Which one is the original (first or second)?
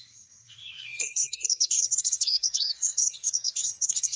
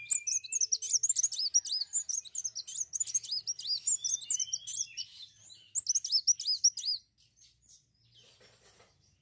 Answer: second